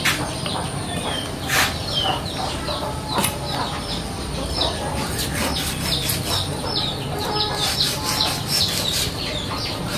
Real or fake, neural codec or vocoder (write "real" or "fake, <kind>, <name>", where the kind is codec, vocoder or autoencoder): fake, vocoder, BigVGAN v2